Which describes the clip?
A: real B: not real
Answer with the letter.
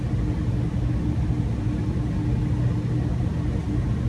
A